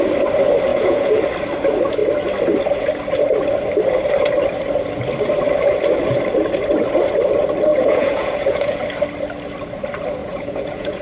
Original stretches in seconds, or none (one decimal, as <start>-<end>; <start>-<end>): 0.0-0.7; 1.2-7.7; 8.8-10.2